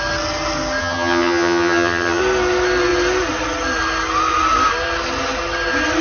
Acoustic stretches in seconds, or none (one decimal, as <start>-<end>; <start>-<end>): 0.0-0.8; 2.2-6.0